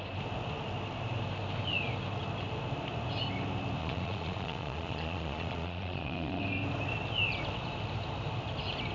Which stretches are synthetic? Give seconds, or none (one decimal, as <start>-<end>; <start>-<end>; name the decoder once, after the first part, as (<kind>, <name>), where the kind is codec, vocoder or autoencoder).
3.8-6.4 (vocoder, Vocos)